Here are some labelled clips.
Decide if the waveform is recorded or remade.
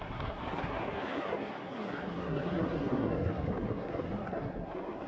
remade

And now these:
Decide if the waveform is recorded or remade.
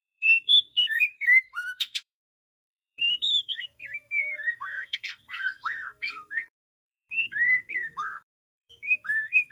remade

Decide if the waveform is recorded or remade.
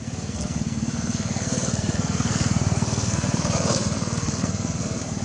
remade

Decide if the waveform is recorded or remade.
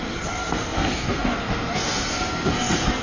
remade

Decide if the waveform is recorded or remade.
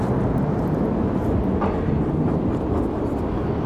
recorded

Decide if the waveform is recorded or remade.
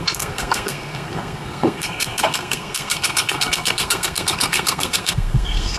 remade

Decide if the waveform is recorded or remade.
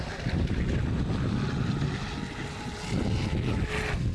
recorded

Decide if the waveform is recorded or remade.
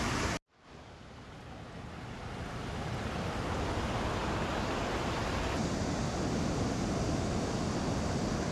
recorded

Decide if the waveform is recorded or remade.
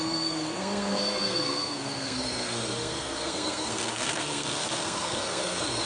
remade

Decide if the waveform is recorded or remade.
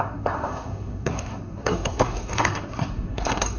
remade